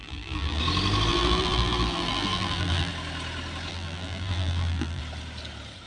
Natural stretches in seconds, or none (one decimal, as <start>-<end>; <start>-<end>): 0.6-1.1; 2.9-3.7; 5.0-5.9